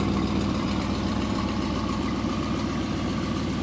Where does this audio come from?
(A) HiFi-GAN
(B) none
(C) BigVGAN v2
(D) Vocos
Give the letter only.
C